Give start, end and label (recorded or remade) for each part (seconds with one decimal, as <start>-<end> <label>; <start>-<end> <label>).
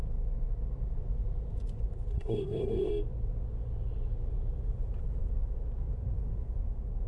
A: 0.0-2.1 recorded; 2.1-2.9 remade; 2.9-7.1 recorded